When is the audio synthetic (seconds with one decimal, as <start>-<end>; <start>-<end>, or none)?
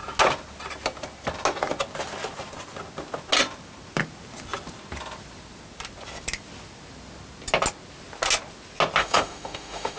9.0-10.0